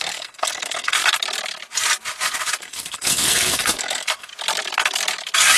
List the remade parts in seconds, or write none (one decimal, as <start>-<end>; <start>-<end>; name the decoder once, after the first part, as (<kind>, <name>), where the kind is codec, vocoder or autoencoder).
0.0-1.0 (codec, SNAC); 2.6-4.3